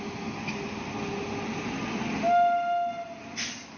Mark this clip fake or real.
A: real